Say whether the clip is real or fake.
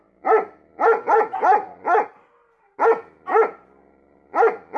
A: real